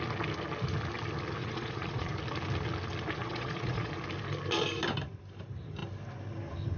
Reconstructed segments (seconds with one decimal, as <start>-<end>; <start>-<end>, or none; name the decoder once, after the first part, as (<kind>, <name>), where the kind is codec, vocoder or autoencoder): 1.4-2.1 (vocoder, Vocos); 3.2-3.9

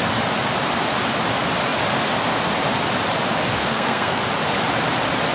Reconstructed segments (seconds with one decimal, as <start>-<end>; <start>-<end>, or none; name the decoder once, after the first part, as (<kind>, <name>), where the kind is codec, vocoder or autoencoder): 3.6-4.2 (codec, SNAC)

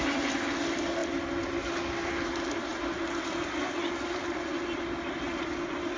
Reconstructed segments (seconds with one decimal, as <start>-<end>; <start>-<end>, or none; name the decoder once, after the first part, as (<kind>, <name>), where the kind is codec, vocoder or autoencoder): none

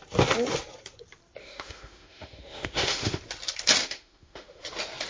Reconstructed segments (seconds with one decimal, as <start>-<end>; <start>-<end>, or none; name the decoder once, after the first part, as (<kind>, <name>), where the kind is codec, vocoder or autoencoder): 1.4-3.2 (autoencoder, DAC-VAE); 3.8-4.6

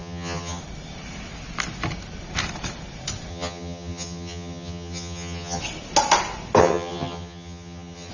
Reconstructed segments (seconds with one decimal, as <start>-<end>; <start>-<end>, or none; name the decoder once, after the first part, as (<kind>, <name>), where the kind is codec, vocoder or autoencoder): 0.0-0.6 (vocoder, HiFi-GAN); 3.3-5.6; 6.6-8.1

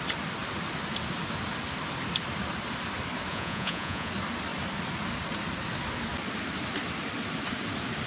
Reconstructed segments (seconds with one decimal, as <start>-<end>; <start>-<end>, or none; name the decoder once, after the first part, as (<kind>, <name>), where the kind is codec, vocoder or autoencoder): 3.3-4.1 (vocoder, Vocos)

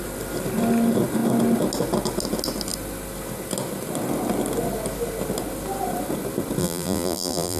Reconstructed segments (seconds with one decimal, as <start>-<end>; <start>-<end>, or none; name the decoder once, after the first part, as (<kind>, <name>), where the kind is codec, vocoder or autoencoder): 6.6-7.6 (vocoder, BigVGAN v2)

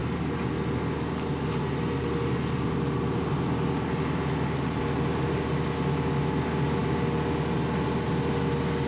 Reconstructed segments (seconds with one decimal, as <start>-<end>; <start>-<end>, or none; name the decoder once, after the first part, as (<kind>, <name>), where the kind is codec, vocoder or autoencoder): none